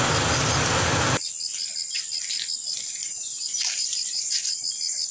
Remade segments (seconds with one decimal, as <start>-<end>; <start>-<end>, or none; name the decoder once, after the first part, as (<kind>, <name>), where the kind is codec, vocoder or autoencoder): 3.0-4.4 (vocoder, BigVGAN v2)